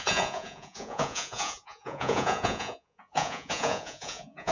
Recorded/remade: remade